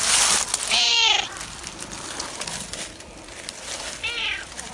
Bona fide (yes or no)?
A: yes